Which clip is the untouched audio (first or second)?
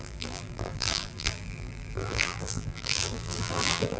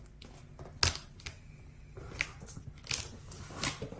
second